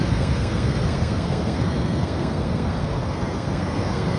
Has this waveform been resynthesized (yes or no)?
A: yes